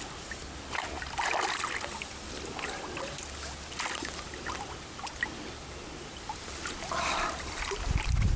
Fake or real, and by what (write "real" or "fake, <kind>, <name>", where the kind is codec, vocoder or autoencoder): real